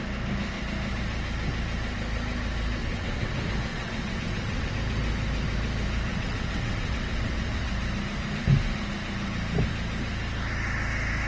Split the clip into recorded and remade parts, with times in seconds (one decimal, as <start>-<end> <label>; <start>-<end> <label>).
0.0-2.8 recorded; 2.8-3.3 remade; 3.3-3.7 recorded; 3.7-4.7 remade; 4.7-6.1 recorded; 6.1-7.7 remade; 7.7-11.3 recorded